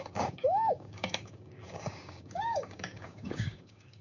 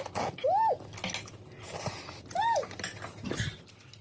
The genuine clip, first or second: second